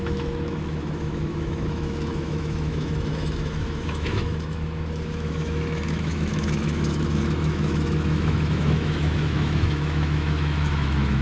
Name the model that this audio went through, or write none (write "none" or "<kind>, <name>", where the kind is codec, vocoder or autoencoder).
autoencoder, DAC-VAE